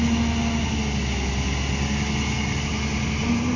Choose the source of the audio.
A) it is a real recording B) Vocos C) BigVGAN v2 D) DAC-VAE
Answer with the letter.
A